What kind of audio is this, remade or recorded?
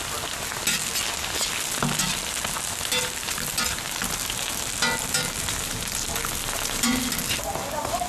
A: recorded